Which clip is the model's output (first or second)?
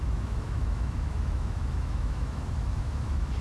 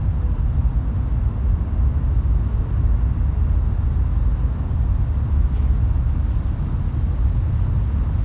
first